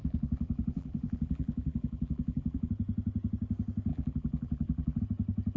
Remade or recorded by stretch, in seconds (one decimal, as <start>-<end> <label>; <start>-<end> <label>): 0.0-2.7 remade; 2.7-3.9 recorded; 3.9-5.0 remade; 5.0-5.6 recorded